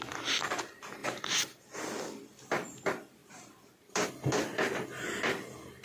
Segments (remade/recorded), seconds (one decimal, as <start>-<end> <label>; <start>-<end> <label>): 0.0-1.0 recorded; 1.0-1.7 remade; 1.7-3.2 recorded; 3.2-4.1 remade; 4.1-5.8 recorded

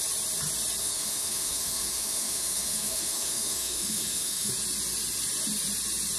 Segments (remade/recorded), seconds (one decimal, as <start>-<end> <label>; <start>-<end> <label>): 0.0-0.8 recorded; 0.8-4.5 remade; 4.5-6.2 recorded

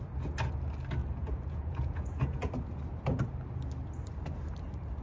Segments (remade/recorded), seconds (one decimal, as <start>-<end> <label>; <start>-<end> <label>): 0.0-1.0 recorded; 1.0-2.5 remade; 2.5-5.0 recorded

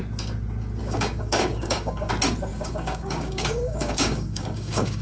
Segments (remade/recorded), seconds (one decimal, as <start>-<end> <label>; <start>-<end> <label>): 0.0-0.8 recorded; 0.8-2.1 remade; 2.1-2.5 recorded; 2.5-5.0 remade

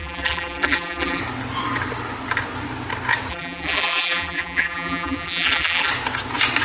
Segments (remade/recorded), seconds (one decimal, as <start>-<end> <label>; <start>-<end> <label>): 0.0-1.2 remade; 1.2-3.3 recorded; 3.3-5.9 remade; 5.9-6.6 recorded

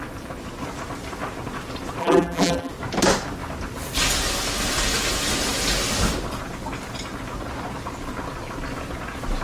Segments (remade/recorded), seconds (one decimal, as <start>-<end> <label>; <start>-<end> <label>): 0.0-2.0 recorded; 2.0-2.7 remade; 2.7-9.4 recorded

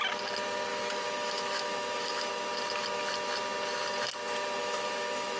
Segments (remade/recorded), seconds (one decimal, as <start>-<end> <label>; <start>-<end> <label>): 0.0-0.7 recorded; 0.7-2.3 remade; 2.3-4.6 recorded; 4.6-5.4 remade